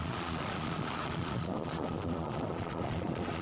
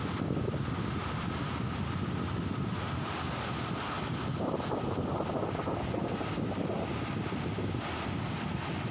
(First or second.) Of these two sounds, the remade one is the first